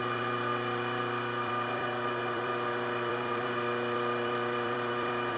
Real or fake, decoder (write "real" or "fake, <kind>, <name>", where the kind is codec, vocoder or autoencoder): fake, vocoder, BigVGAN v2